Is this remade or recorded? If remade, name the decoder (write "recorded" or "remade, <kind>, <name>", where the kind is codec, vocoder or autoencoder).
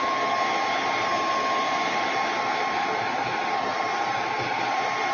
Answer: recorded